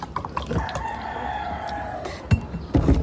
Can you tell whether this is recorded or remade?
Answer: recorded